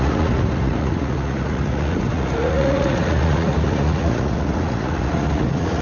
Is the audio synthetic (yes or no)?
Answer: yes